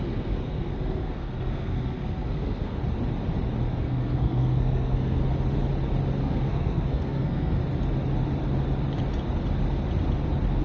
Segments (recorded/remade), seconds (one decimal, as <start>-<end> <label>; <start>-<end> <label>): 0.0-2.8 remade; 2.8-3.7 recorded; 3.7-5.2 remade; 5.2-6.2 recorded; 6.2-7.6 remade; 7.6-10.6 recorded

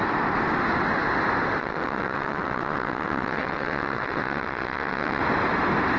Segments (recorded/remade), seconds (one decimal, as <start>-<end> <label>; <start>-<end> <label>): 0.0-1.6 recorded; 1.6-5.2 remade; 5.2-6.0 recorded

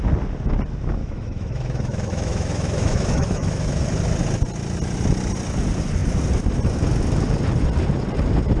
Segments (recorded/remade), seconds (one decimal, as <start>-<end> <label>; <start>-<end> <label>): 0.0-1.0 recorded; 1.0-3.8 remade; 3.8-8.6 recorded